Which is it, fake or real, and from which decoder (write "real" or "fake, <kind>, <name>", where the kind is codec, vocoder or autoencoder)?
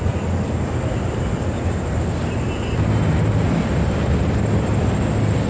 real